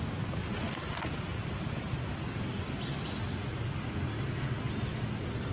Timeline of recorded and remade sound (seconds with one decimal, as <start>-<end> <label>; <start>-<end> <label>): 0.0-5.5 recorded